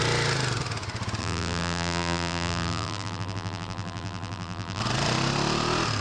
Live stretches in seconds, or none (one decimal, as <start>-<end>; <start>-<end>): 0.0-1.2; 4.8-6.0